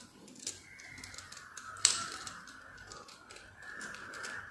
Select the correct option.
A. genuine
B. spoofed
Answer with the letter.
A